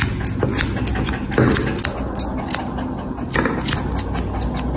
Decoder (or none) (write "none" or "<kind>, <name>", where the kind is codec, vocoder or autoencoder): none